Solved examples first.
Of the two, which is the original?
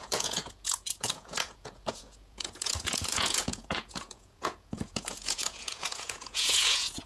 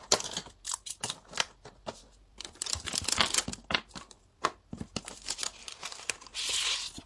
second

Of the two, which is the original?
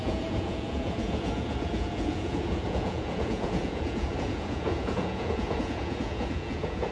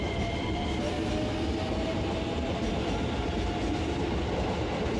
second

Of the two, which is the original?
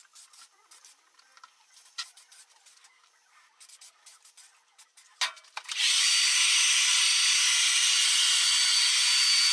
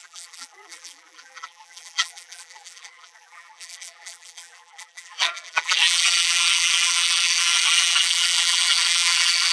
first